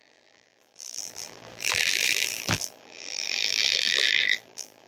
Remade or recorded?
remade